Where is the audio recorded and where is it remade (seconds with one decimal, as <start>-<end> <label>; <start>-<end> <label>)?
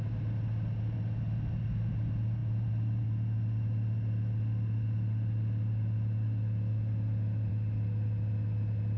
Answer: 0.0-9.0 recorded